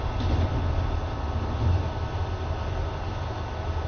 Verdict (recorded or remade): recorded